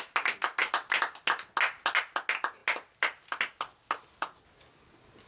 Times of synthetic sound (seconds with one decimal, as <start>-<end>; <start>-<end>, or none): none